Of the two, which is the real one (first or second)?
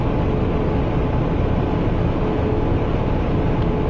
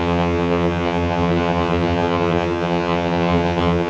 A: first